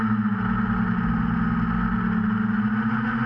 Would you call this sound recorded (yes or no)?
yes